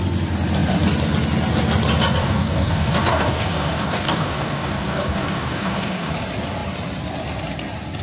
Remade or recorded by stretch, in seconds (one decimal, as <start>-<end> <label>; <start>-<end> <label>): 0.0-2.2 recorded; 2.2-6.1 remade; 6.1-8.0 recorded